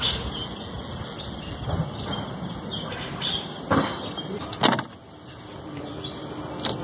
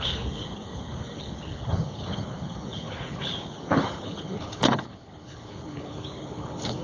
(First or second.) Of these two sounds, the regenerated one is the second